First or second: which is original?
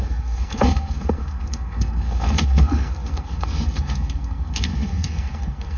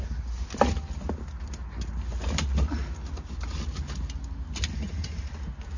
second